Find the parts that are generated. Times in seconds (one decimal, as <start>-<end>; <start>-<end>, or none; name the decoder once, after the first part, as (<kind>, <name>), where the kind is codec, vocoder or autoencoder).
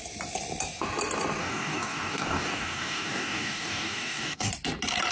1.4-4.5 (codec, DAC)